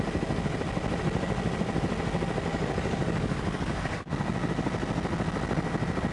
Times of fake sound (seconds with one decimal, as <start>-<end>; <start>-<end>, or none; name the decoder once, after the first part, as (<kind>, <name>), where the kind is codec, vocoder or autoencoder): 2.5-4.1 (codec, DAC)